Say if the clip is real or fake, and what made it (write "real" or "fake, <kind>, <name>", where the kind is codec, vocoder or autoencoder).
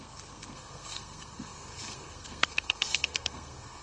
fake, codec, SNAC